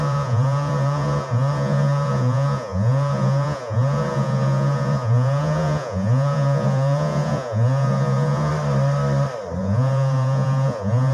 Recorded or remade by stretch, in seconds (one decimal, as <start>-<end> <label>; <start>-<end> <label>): 0.0-8.5 remade; 8.5-9.6 recorded; 9.6-11.1 remade